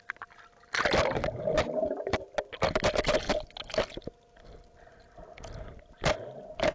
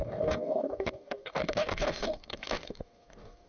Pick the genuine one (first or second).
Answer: first